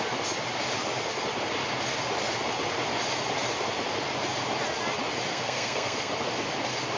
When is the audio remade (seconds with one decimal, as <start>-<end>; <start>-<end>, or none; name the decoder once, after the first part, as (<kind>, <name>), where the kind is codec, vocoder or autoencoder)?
5.3-6.1 (codec, SNAC)